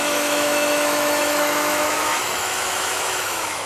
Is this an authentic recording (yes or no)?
no